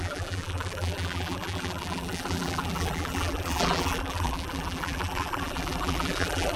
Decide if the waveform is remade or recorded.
remade